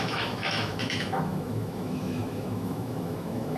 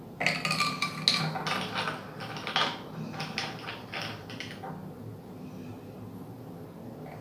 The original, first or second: second